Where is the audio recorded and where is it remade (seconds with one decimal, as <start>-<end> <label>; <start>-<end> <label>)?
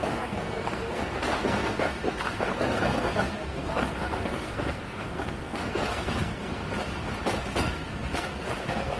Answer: 0.0-6.6 remade; 6.6-7.4 recorded; 7.4-9.0 remade